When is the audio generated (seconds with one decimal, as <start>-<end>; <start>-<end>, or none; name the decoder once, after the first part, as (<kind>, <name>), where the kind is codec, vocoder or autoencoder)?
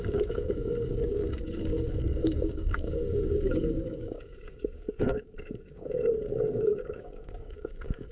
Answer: 0.0-8.1 (codec, DAC)